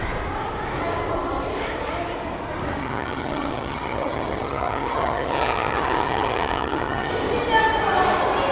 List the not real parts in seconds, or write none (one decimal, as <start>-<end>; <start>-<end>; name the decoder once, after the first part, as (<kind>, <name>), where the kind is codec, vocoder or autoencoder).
2.8-7.1 (vocoder, HiFi-GAN)